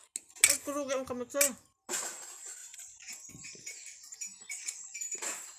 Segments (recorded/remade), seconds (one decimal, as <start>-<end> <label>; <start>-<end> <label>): 0.0-5.6 recorded